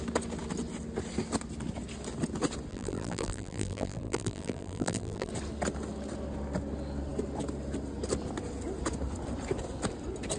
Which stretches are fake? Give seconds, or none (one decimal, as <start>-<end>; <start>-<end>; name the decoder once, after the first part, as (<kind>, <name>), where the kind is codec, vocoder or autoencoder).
2.7-5.3 (vocoder, BigVGAN v2)